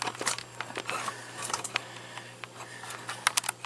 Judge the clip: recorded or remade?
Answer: recorded